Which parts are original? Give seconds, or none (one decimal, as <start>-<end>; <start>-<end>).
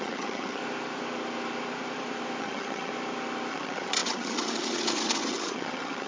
0.6-2.4; 2.9-3.5